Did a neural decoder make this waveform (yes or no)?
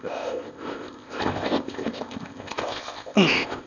yes